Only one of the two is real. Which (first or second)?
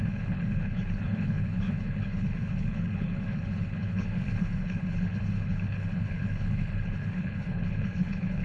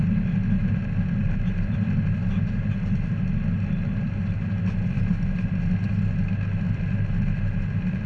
second